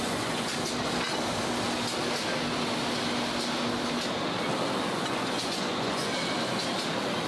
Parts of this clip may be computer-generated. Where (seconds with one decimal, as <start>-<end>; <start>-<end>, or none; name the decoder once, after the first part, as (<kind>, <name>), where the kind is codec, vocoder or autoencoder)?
0.0-0.5 (vocoder, Vocos); 4.9-6.1